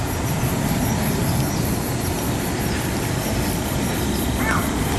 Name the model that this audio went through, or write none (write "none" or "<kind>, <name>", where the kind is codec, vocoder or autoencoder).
none